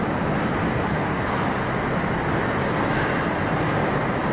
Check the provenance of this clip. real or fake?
real